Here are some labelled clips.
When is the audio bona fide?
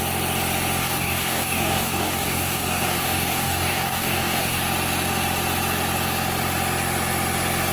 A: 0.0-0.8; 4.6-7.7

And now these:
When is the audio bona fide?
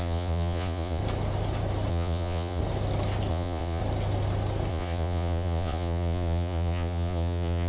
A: 1.0-1.9; 2.6-3.3; 3.8-4.7